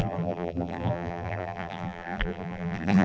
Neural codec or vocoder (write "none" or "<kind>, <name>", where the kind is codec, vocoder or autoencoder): vocoder, BigVGAN v2